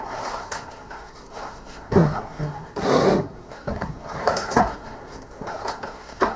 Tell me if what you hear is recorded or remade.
remade